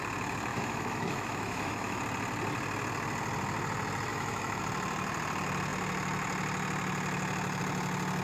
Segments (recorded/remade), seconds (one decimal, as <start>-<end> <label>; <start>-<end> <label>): 0.0-0.5 recorded; 0.5-2.0 remade; 2.0-4.1 recorded; 4.1-4.6 remade; 4.6-8.2 recorded

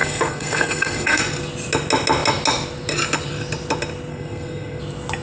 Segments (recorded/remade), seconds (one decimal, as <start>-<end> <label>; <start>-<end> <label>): 0.0-1.2 remade; 1.2-4.1 recorded; 4.1-4.8 remade; 4.8-5.2 recorded

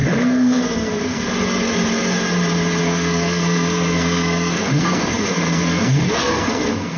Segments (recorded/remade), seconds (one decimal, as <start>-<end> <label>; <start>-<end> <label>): 0.0-1.3 remade; 1.3-2.8 recorded; 2.8-7.0 remade

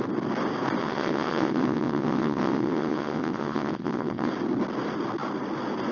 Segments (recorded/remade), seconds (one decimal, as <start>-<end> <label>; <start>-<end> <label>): 0.0-0.8 recorded; 0.8-4.3 remade; 4.3-5.9 recorded

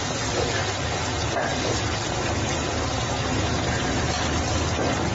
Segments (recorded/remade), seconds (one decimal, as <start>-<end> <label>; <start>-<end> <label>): 0.0-5.1 recorded

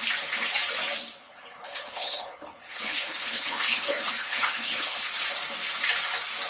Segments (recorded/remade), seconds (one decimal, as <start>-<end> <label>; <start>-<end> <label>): 0.0-1.2 recorded; 1.2-5.1 remade; 5.1-6.5 recorded